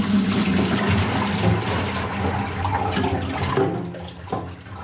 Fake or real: real